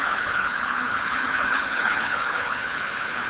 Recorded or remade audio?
remade